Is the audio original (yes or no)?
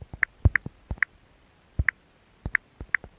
yes